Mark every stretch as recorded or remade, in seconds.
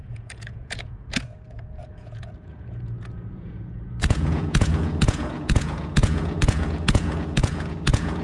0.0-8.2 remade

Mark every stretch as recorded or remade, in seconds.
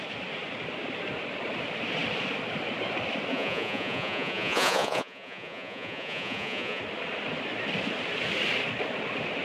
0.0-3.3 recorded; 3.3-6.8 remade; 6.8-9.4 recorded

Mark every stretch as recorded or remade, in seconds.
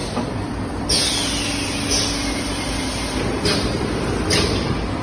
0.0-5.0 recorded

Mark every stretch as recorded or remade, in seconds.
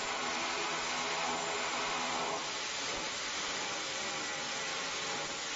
0.0-0.8 remade; 0.8-5.6 recorded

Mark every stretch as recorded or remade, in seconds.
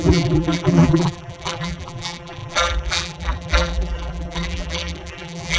0.0-5.6 remade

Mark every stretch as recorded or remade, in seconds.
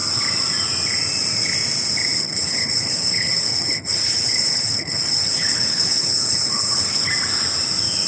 0.0-2.2 recorded; 2.2-7.1 remade; 7.1-8.1 recorded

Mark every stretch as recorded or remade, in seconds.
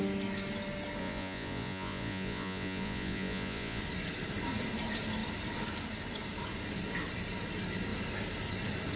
0.0-1.0 recorded; 1.0-3.8 remade; 3.8-9.0 recorded